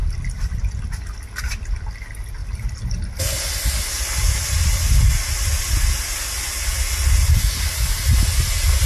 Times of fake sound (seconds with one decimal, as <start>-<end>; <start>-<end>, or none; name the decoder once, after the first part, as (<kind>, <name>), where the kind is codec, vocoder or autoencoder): none